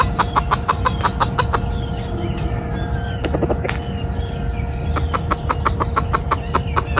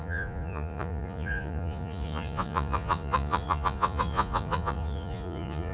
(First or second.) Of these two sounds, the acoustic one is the first